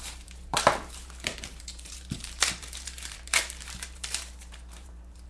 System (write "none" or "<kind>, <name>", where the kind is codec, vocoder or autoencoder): vocoder, BigVGAN v2